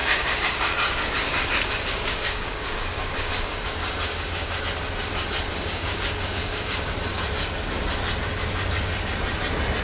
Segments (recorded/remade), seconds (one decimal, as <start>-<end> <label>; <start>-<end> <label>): 0.0-4.6 remade; 4.6-5.5 recorded; 5.5-6.9 remade; 6.9-9.8 recorded